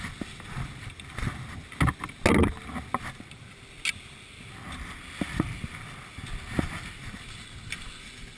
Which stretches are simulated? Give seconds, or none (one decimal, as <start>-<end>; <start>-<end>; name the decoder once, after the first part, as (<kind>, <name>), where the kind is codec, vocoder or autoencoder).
none